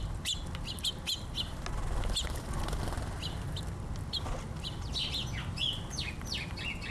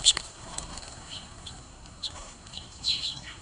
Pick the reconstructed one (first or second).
second